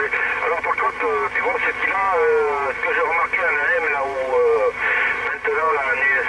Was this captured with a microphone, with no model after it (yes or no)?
yes